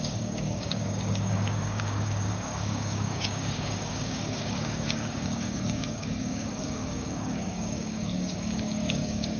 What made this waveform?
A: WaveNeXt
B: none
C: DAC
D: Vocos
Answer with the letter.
C